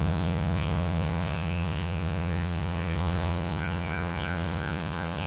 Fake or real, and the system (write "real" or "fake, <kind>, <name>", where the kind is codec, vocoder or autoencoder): fake, vocoder, Vocos